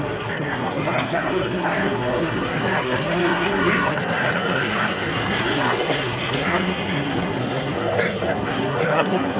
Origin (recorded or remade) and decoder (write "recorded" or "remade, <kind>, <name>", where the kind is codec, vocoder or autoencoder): remade, codec, SNAC